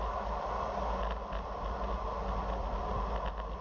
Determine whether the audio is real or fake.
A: real